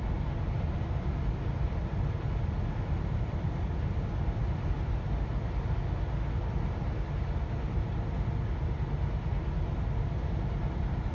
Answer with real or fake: real